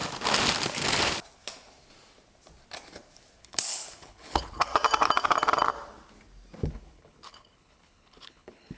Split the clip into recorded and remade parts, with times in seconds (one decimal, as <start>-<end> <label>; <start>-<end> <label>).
0.0-3.4 recorded; 3.4-4.7 remade; 4.7-6.7 recorded; 6.7-8.8 remade